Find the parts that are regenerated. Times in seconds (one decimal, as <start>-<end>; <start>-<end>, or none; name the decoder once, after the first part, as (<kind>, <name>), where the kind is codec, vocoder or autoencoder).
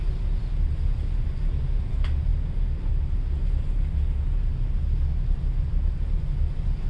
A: none